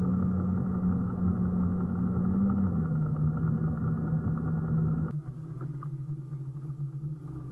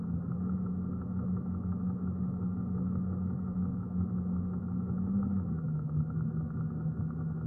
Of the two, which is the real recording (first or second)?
first